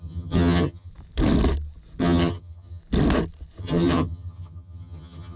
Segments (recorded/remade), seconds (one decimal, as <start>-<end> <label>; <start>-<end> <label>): 0.0-0.9 remade; 0.9-2.0 recorded; 2.0-2.8 remade; 2.8-3.6 recorded; 3.6-5.4 remade